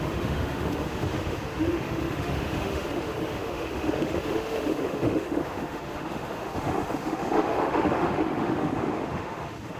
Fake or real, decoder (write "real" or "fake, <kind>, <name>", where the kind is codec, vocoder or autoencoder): fake, autoencoder, DAC-VAE